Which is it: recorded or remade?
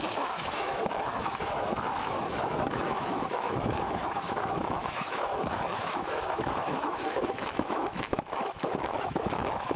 remade